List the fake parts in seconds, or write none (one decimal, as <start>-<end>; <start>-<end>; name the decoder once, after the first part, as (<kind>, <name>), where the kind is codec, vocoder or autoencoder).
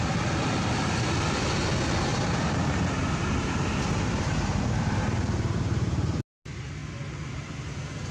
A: 2.1-6.2 (vocoder, BigVGAN v2)